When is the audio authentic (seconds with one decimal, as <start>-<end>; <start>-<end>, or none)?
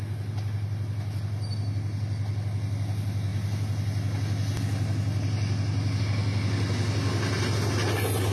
0.0-8.3